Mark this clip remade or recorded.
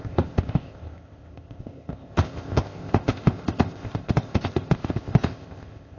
remade